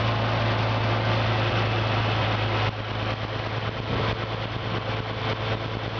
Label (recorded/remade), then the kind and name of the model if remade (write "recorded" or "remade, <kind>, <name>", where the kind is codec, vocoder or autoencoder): recorded